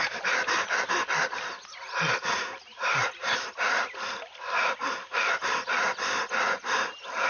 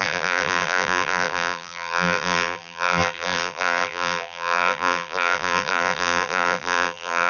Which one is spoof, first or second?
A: second